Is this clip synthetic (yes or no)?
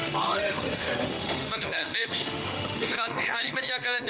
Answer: yes